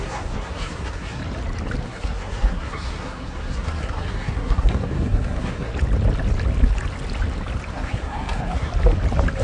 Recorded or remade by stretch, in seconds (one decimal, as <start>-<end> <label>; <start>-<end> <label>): 0.0-1.2 remade; 1.2-1.8 recorded; 1.8-5.7 remade; 5.7-7.7 recorded; 7.7-8.7 remade; 8.7-9.4 recorded